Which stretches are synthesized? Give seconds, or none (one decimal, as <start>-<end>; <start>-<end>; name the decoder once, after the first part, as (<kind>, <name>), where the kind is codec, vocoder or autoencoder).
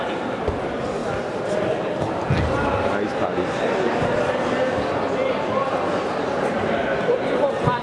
none